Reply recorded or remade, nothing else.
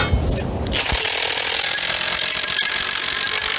recorded